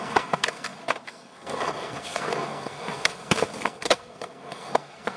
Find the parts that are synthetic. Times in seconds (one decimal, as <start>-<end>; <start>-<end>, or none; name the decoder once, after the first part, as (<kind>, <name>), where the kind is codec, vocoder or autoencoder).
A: 0.0-5.2 (codec, SNAC)